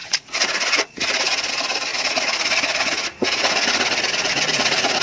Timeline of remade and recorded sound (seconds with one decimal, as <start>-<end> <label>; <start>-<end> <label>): 0.0-5.0 remade